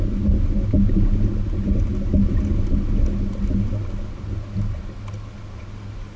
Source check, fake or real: real